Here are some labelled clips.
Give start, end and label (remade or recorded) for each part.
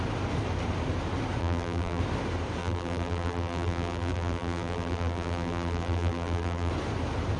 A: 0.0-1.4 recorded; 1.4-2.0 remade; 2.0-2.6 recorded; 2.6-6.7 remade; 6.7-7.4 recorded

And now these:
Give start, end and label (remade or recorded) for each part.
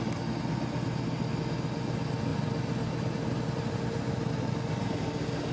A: 0.0-5.5 recorded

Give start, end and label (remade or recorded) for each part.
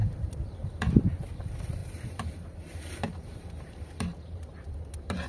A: 0.0-1.0 remade; 1.0-1.8 recorded; 1.8-5.3 remade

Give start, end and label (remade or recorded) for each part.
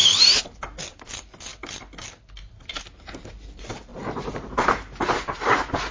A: 0.0-0.8 remade; 0.8-3.9 recorded; 3.9-5.0 remade; 5.0-5.9 recorded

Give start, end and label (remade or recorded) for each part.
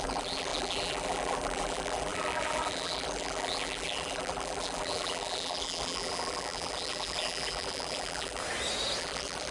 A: 0.0-8.4 remade; 8.4-9.0 recorded; 9.0-9.5 remade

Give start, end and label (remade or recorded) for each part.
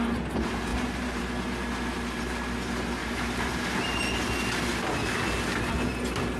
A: 0.0-0.7 recorded; 0.7-1.2 remade; 1.2-3.0 recorded; 3.0-3.7 remade; 3.7-6.4 recorded